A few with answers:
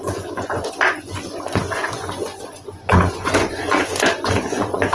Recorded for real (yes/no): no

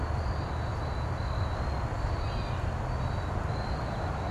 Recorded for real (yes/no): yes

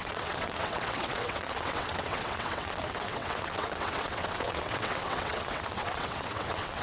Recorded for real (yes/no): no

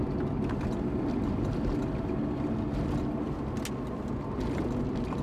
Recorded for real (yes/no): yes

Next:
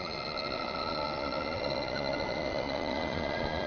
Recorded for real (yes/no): no